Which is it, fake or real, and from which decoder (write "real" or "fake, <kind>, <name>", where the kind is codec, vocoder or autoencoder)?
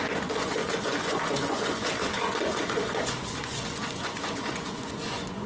fake, vocoder, Vocos